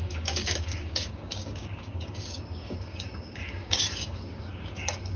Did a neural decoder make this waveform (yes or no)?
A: yes